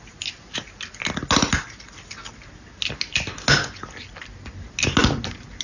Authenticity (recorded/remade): recorded